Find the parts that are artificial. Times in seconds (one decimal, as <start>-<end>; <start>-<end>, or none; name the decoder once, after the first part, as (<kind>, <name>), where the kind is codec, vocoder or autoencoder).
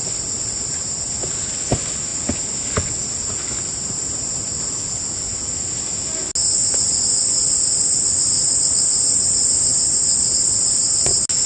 none